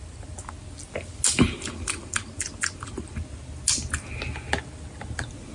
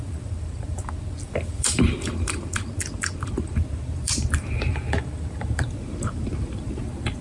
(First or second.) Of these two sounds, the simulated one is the second